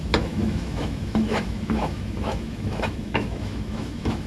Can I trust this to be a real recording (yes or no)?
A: no